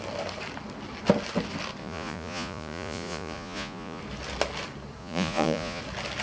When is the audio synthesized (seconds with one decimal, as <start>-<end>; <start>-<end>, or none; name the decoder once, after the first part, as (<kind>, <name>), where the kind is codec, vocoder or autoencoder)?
1.8-4.0 (vocoder, Vocos); 5.0-5.8